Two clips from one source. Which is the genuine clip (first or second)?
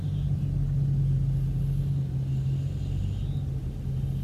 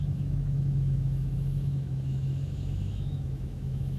first